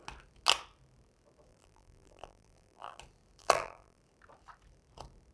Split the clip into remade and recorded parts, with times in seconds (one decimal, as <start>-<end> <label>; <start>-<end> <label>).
0.0-1.5 recorded; 1.5-3.0 remade; 3.0-3.4 recorded; 3.4-4.0 remade; 4.0-5.3 recorded